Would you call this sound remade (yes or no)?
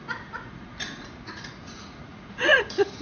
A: yes